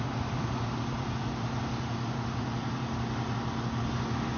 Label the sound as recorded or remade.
recorded